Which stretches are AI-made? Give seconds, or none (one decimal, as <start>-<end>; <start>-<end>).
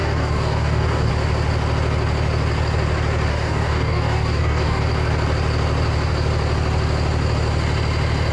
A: 0.0-1.1; 3.3-4.8